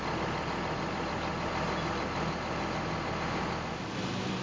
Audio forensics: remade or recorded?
recorded